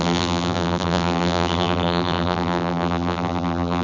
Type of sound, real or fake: fake